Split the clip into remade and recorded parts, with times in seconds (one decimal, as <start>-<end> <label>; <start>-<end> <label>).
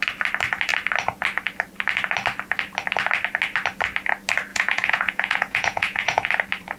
0.0-4.5 recorded; 4.5-6.3 remade; 6.3-6.8 recorded